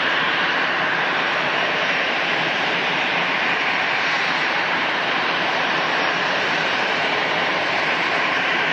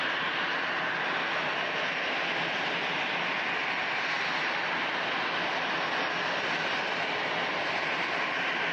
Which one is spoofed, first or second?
first